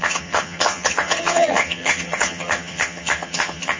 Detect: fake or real fake